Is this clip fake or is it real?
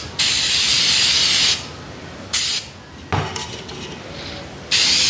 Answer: real